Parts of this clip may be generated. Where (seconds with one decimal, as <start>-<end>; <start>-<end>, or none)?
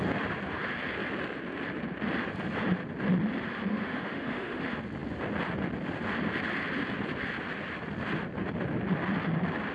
3.7-4.6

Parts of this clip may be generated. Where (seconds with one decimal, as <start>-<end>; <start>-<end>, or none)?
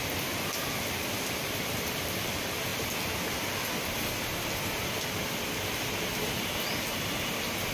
none